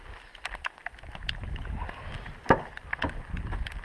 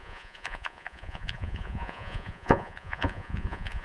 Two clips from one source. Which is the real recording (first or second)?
first